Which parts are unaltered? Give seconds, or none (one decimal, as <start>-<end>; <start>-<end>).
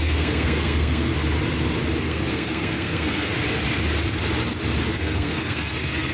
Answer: 1.1-2.0; 3.3-4.9